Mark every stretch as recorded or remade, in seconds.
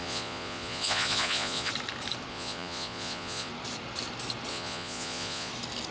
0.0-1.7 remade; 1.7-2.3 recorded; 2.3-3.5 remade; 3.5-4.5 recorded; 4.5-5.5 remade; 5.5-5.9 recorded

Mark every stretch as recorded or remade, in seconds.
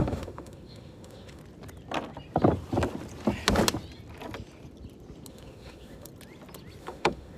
0.0-1.4 remade; 1.4-5.3 recorded; 5.3-6.1 remade; 6.1-6.8 recorded; 6.8-7.4 remade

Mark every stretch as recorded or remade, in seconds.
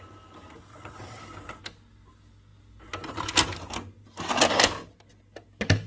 0.0-0.7 recorded; 0.7-1.2 remade; 1.2-5.9 recorded